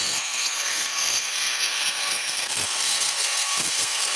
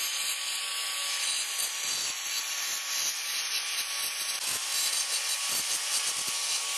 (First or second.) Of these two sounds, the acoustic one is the second